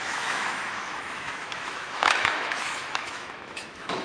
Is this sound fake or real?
fake